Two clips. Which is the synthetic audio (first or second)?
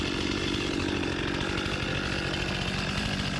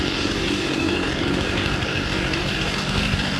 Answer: second